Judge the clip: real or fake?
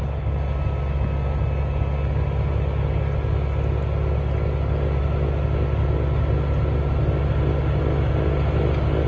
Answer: real